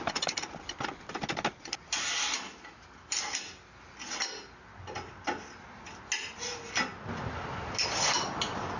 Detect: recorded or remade recorded